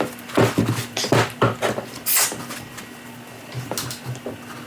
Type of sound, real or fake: real